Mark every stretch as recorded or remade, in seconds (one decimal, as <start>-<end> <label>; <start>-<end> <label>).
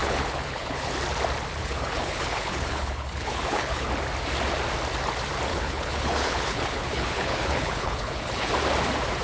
0.0-0.9 remade; 0.9-1.6 recorded; 1.6-3.9 remade; 3.9-5.5 recorded; 5.5-8.5 remade; 8.5-9.2 recorded